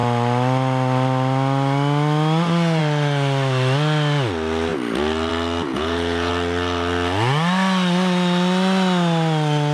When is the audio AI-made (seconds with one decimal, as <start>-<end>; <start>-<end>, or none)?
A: 5.7-6.3

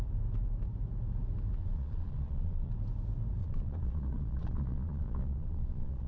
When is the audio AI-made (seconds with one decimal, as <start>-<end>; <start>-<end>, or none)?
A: 1.6-2.7; 3.4-6.1